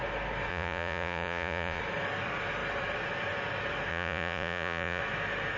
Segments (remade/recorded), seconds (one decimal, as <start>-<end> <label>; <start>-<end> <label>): 0.0-0.5 recorded; 0.5-1.8 remade; 1.8-3.9 recorded; 3.9-5.0 remade; 5.0-5.6 recorded